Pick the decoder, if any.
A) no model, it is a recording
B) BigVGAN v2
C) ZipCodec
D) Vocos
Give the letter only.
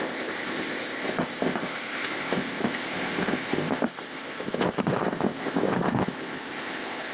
C